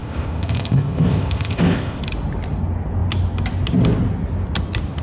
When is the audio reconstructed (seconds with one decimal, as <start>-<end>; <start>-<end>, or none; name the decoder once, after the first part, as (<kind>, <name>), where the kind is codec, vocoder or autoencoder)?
0.0-2.0 (codec, ZipCodec)